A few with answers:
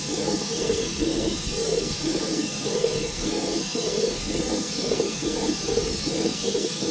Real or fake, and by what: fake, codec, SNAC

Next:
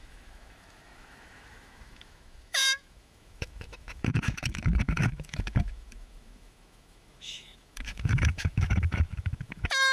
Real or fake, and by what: fake, autoencoder, DAC-VAE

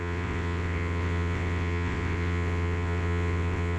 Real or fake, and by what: fake, vocoder, WaveNeXt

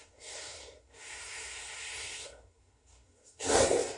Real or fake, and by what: fake, codec, SNAC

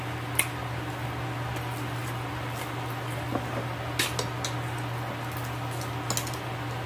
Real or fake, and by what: real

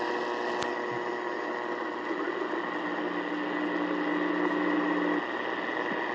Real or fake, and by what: real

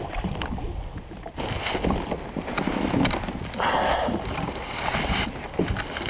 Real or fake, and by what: real